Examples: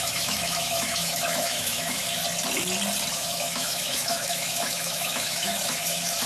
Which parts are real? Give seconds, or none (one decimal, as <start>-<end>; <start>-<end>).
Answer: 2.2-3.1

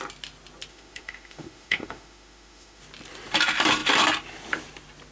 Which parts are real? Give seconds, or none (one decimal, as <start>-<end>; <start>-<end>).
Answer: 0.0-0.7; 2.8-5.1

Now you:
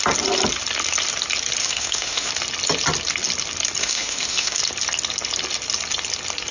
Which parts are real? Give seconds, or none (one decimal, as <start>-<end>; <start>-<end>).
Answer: 0.0-1.6; 2.3-3.8; 4.6-6.5

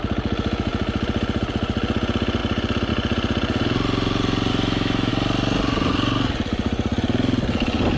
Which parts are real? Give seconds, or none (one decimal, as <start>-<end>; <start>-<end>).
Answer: 0.0-4.5; 5.1-8.0